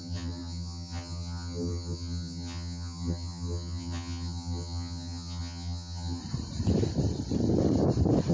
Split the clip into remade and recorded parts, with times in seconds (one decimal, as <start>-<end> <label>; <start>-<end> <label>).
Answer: 0.0-6.2 remade; 6.2-8.3 recorded